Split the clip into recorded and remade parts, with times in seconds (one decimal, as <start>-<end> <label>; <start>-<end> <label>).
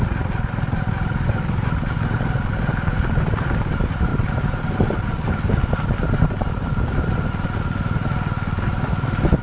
0.0-9.4 recorded